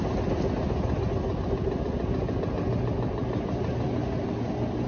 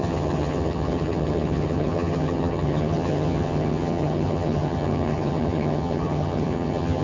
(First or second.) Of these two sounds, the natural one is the first